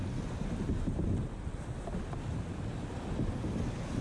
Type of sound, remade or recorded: recorded